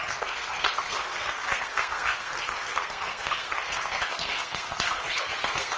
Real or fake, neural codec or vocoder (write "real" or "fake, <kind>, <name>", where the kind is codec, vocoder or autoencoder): fake, codec, SNAC